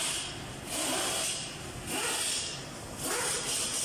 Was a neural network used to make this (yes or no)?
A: no